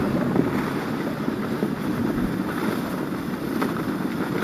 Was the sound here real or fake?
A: real